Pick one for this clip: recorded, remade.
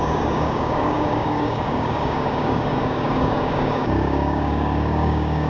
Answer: remade